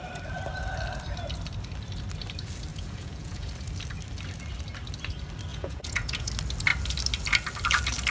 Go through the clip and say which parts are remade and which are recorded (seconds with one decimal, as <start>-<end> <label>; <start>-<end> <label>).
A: 0.0-2.7 recorded; 2.7-3.5 remade; 3.5-5.5 recorded; 5.5-6.3 remade; 6.3-8.1 recorded